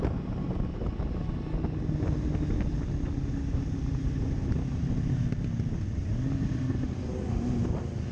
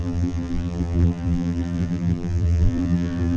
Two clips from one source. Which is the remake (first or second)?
second